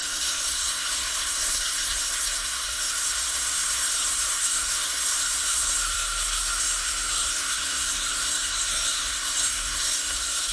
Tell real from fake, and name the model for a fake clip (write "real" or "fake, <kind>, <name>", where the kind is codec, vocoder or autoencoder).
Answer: fake, codec, SNAC